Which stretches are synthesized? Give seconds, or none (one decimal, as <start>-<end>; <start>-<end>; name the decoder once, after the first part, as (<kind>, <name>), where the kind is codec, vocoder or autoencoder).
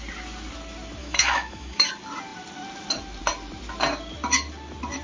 1.0-1.9 (autoencoder, DAC-VAE)